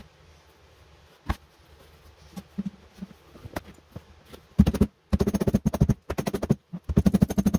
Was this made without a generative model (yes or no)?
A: yes